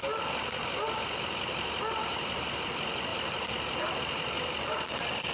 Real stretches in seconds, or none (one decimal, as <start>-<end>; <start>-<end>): 0.0-2.0; 2.7-3.1; 4.0-5.3